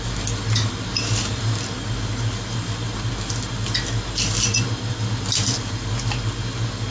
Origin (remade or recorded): recorded